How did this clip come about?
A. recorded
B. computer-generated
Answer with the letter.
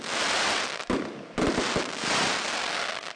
A